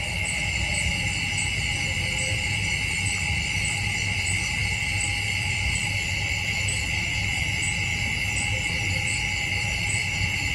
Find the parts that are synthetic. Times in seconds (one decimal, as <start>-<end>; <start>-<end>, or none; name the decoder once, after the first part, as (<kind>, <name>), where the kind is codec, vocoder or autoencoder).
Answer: 0.0-10.5 (vocoder, BigVGAN v2)